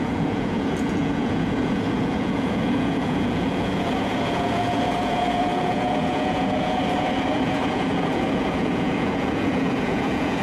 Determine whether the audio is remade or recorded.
remade